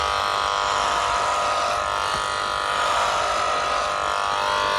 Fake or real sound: real